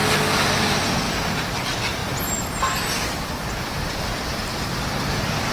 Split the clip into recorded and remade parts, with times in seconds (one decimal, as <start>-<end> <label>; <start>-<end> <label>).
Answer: 0.0-2.0 recorded; 2.0-5.5 remade